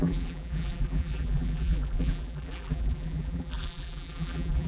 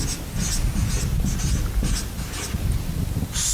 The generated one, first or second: first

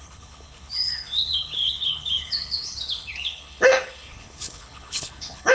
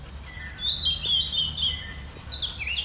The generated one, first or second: first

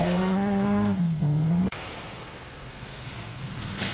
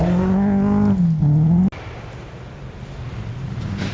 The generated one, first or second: first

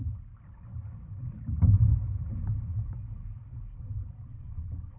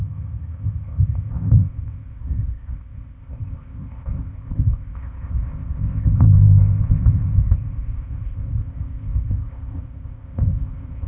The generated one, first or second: second